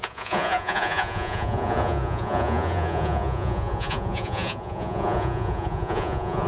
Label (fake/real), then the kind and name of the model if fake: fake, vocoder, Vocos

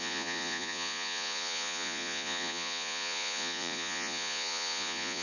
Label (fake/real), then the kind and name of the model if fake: fake, vocoder, Vocos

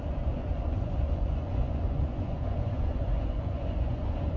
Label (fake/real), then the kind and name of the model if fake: fake, vocoder, Vocos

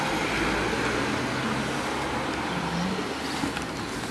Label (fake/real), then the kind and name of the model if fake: real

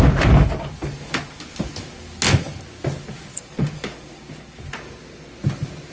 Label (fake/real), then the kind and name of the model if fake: real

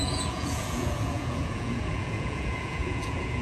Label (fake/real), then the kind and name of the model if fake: fake, vocoder, Vocos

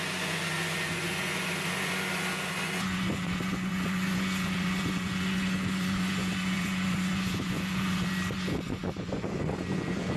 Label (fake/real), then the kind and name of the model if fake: fake, vocoder, Vocos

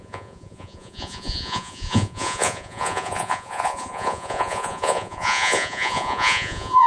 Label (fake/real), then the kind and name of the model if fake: fake, vocoder, Vocos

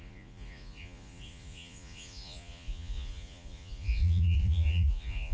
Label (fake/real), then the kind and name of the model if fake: fake, vocoder, Vocos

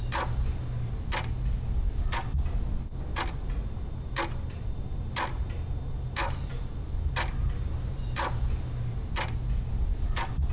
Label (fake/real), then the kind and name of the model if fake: real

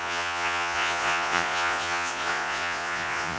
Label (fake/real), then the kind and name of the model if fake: fake, vocoder, Vocos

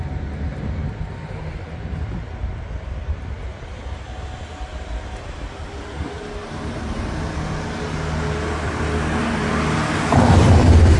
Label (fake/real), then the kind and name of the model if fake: real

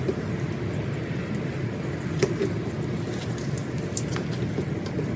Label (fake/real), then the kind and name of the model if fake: real